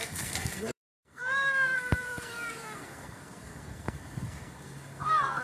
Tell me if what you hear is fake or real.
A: fake